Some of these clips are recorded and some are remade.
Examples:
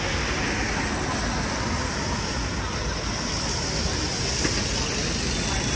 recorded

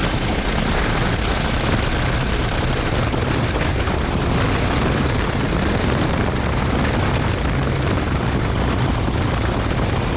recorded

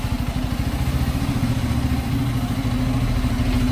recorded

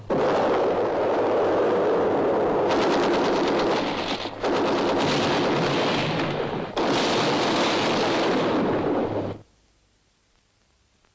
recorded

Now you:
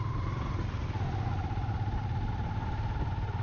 recorded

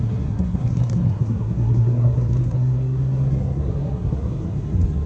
remade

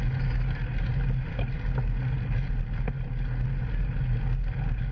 recorded